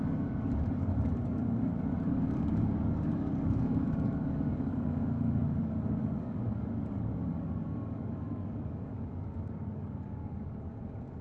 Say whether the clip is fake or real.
fake